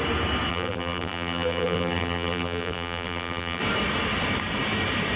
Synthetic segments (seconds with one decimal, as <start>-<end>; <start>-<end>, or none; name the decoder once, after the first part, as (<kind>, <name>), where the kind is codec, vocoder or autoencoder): 0.5-3.6 (vocoder, BigVGAN v2)